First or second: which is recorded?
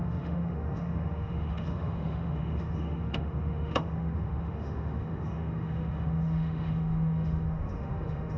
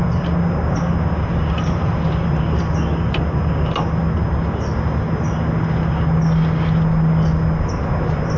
second